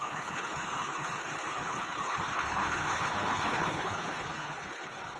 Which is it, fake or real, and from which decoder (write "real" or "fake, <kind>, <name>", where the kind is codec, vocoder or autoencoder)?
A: fake, codec, HILCodec